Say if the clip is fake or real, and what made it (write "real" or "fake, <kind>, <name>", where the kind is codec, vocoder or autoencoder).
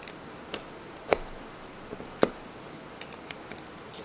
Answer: real